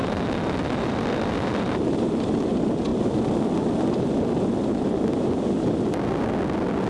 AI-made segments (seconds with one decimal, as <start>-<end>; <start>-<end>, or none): none